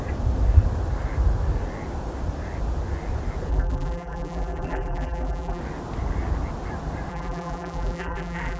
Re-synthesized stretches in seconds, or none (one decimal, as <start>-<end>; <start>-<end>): 3.5-5.6; 7.1-8.6

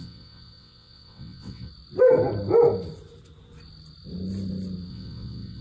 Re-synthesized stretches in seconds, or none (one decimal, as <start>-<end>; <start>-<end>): 0.0-1.7; 4.9-5.6